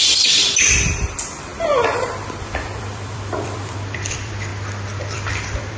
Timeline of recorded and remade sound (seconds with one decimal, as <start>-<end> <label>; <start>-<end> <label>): 0.0-1.5 remade; 1.5-2.4 recorded; 2.4-4.5 remade; 4.5-5.0 recorded; 5.0-5.8 remade